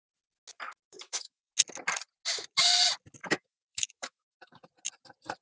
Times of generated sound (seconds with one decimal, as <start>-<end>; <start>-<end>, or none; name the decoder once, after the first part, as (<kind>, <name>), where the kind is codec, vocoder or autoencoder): 0.9-1.5 (autoencoder, DAC-VAE); 3.2-4.6